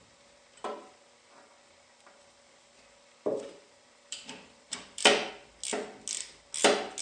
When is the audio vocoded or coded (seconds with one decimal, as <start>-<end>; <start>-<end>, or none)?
3.5-5.3

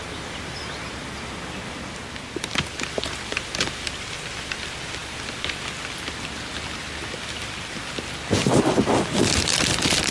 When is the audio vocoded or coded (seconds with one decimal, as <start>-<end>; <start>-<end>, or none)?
none

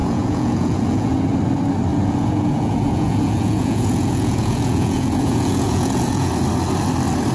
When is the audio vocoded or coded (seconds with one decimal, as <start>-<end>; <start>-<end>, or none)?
0.0-1.2; 1.9-6.3

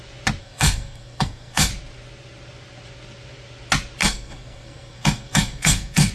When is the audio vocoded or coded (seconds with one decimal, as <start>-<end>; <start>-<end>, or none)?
0.4-1.7; 4.0-6.1

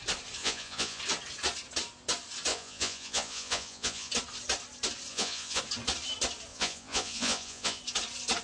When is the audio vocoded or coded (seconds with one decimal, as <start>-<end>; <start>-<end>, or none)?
0.4-1.0; 2.5-4.1; 5.1-5.6; 6.5-7.8

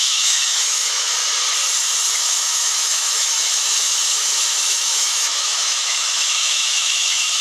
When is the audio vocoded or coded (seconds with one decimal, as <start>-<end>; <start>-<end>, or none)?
0.0-1.2; 2.2-7.4

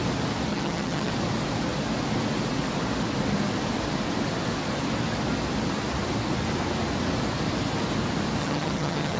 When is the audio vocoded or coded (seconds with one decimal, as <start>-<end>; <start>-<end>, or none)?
0.5-1.1; 8.4-9.2